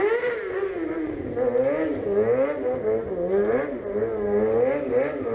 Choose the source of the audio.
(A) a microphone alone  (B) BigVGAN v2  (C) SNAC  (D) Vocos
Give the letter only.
A